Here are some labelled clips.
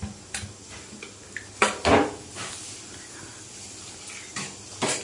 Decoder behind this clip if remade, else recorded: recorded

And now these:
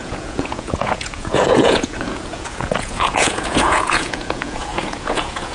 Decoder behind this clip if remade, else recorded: remade, vocoder, Vocos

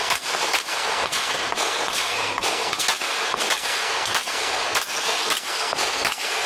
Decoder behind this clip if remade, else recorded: remade, codec, SNAC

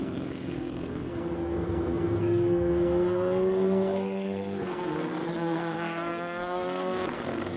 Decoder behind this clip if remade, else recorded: remade, codec, SNAC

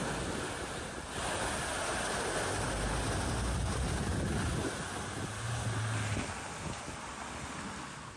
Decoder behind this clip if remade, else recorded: recorded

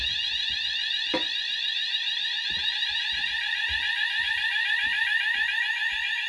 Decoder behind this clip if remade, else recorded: recorded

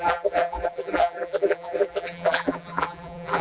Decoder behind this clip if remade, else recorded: remade, vocoder, BigVGAN v2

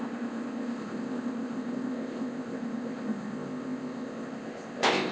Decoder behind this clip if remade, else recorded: remade, codec, ZipCodec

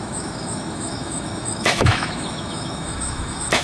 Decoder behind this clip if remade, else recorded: remade, autoencoder, DAC-VAE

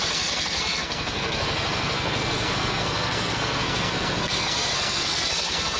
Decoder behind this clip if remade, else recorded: remade, codec, SNAC